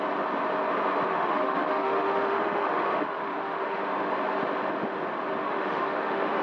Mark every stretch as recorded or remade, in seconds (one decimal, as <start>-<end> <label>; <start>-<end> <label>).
0.0-1.1 recorded; 1.1-3.8 remade; 3.8-5.4 recorded; 5.4-6.4 remade